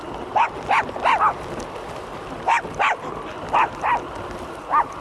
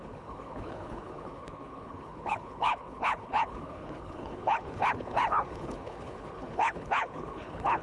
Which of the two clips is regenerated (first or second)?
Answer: second